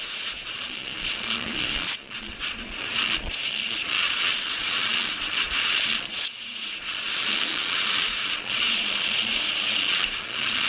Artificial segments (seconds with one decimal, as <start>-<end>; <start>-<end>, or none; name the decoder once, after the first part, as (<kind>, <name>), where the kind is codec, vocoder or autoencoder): 0.0-10.7 (vocoder, Vocos)